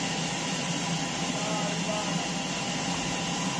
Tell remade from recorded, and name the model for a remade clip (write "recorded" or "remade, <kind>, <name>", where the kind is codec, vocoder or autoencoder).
recorded